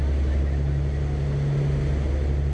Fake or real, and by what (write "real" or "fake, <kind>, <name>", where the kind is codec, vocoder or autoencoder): real